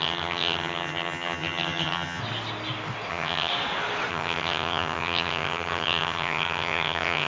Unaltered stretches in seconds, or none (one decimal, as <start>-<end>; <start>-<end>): 2.2-3.1; 3.5-4.1